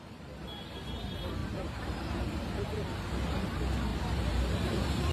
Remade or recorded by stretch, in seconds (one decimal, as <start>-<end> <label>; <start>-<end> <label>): 0.0-1.4 recorded; 1.4-2.6 remade; 2.6-3.9 recorded; 3.9-5.1 remade